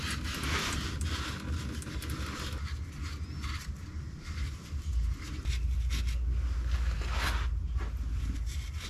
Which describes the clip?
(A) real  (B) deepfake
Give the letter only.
A